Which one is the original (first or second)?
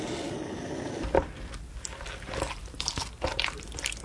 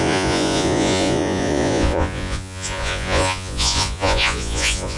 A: first